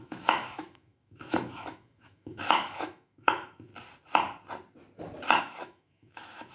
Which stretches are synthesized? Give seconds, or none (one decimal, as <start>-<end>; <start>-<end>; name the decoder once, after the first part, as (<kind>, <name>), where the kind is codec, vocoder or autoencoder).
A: 0.0-3.7 (autoencoder, DAC-VAE); 5.4-6.5